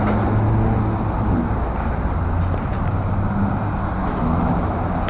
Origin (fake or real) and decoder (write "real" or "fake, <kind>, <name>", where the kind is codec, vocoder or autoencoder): real